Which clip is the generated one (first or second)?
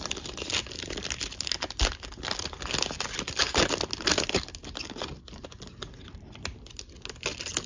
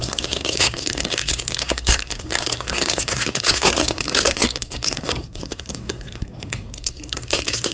second